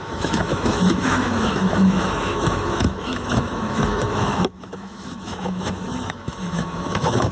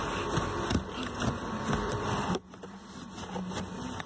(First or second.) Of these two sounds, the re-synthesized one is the first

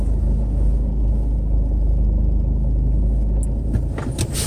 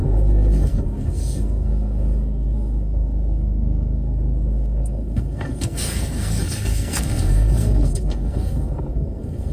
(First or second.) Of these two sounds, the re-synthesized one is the second